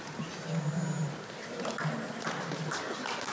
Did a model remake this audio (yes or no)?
no